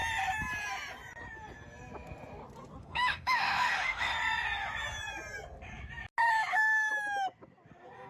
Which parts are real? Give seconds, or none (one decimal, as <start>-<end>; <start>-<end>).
0.0-2.8; 4.1-6.5; 6.9-8.1